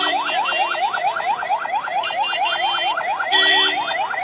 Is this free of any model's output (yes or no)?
yes